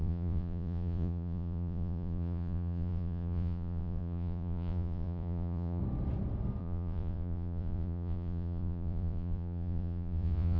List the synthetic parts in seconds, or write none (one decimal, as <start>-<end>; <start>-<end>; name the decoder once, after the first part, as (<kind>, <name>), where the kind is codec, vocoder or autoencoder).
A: 0.0-5.8 (vocoder, Vocos); 6.6-10.6